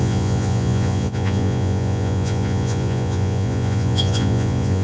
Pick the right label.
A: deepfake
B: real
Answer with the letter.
A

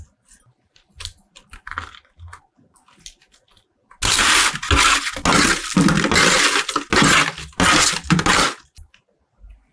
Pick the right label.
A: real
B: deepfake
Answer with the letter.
A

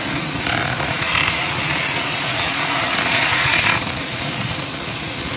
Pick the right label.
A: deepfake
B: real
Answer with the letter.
A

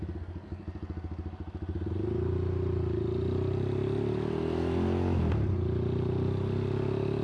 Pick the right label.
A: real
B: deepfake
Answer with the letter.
A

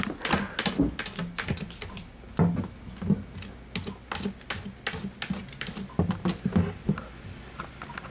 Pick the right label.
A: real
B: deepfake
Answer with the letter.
A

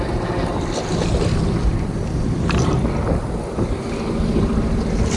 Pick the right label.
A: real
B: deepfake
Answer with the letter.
A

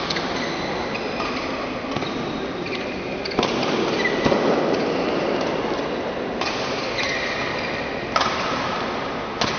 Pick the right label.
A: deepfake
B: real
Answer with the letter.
B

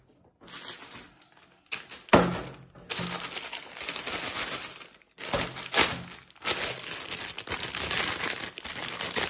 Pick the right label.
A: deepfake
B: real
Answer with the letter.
B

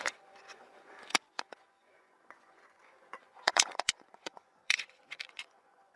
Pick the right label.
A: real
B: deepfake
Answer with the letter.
B